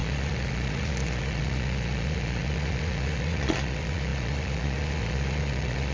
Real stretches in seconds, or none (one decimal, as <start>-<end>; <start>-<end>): none